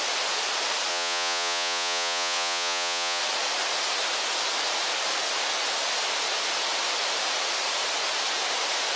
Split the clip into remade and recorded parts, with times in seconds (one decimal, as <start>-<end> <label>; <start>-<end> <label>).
0.0-0.9 recorded; 0.9-3.2 remade; 3.2-9.0 recorded